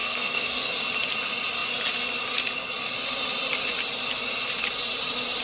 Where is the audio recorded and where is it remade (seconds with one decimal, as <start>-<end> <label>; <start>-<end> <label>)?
0.0-0.7 remade; 0.7-5.4 recorded